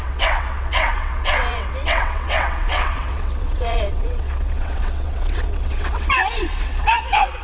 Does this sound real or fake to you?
fake